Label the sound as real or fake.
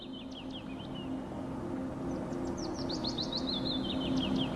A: real